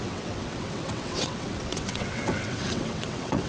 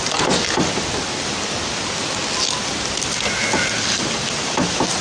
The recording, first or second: second